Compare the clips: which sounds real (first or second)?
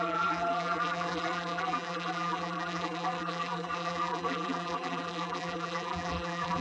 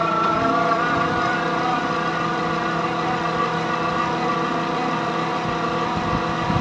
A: second